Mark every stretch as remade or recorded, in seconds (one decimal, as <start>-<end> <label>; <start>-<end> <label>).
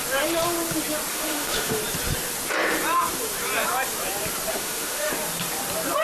0.0-1.1 recorded; 1.1-1.8 remade; 1.8-4.5 recorded; 4.5-5.1 remade; 5.1-6.0 recorded